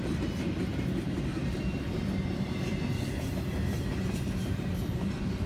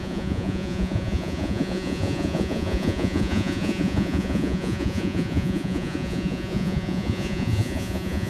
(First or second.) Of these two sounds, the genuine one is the first